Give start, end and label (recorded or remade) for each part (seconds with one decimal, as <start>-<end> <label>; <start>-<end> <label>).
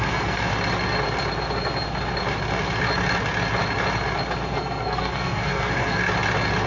0.0-0.5 remade; 0.5-4.5 recorded; 4.5-6.0 remade; 6.0-6.7 recorded